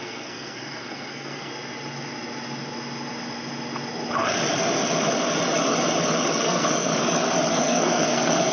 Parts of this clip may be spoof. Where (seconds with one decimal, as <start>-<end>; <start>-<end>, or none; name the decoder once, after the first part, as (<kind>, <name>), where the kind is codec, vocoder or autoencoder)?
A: 0.0-1.5 (codec, SNAC); 6.3-6.9; 7.5-8.5

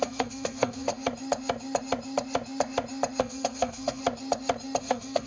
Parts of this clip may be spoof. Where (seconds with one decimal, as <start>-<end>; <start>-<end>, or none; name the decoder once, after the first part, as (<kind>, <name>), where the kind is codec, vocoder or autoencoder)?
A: 0.0-0.9 (codec, SNAC); 3.2-4.0; 4.8-5.3

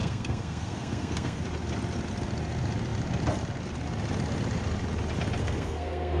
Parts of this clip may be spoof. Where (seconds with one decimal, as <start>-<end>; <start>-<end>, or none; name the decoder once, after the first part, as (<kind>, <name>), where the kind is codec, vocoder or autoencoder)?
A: 0.0-1.4 (codec, SNAC); 5.4-6.2

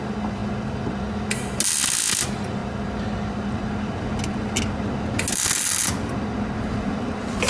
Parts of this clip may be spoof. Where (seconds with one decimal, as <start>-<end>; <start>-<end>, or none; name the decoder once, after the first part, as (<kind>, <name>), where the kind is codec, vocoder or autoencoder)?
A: none

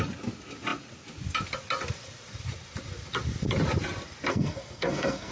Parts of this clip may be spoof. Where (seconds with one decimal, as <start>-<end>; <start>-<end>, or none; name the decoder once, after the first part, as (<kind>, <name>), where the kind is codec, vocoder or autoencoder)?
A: 4.3-5.3 (codec, SNAC)

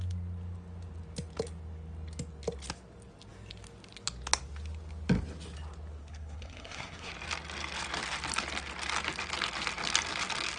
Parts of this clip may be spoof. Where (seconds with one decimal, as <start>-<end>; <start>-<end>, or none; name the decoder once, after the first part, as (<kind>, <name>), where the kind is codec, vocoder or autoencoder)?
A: 6.0-7.1 (codec, SNAC)

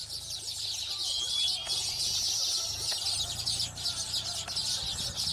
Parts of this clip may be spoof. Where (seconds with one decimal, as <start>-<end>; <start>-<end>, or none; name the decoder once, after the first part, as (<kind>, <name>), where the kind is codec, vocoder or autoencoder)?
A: none